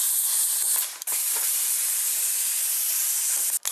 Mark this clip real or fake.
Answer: real